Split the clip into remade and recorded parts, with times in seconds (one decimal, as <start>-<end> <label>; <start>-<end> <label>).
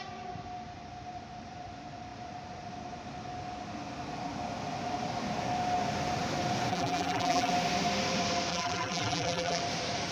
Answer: 0.0-6.7 recorded; 6.7-7.5 remade; 7.5-8.5 recorded; 8.5-9.6 remade; 9.6-10.1 recorded